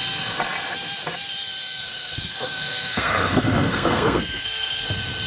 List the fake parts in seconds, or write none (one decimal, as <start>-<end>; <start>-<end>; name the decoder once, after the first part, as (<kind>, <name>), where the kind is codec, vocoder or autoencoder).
1.6-4.8 (codec, SNAC)